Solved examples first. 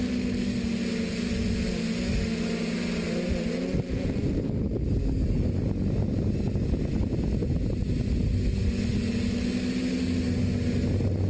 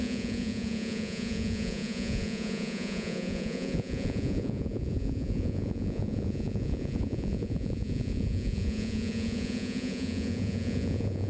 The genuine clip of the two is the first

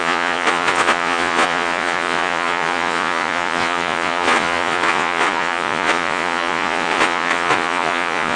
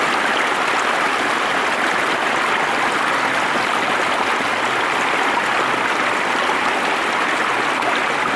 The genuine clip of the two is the second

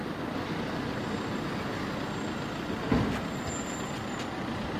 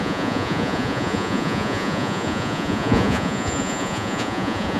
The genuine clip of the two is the first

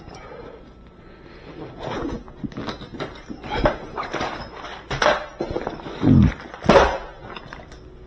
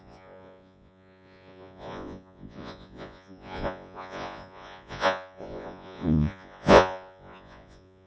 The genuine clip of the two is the first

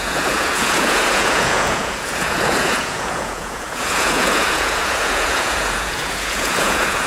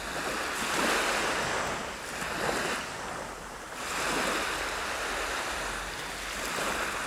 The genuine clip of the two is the second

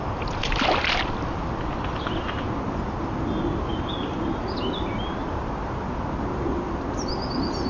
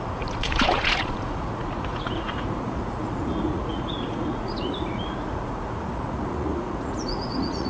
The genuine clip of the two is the first